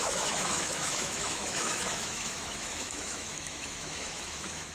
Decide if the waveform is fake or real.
fake